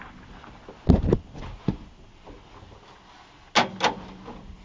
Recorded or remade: recorded